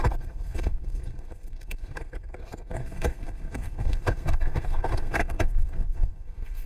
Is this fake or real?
fake